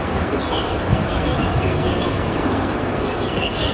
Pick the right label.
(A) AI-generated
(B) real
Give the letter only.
A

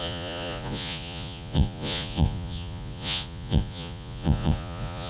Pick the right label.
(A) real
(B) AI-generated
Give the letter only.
B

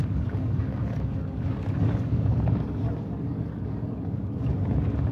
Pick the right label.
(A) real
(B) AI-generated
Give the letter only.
B